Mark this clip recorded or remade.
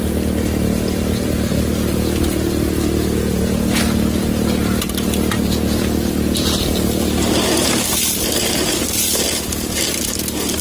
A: recorded